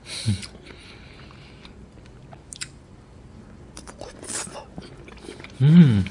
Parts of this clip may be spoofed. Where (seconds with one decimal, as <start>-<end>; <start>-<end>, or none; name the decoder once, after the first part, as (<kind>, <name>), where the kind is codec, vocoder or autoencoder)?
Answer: none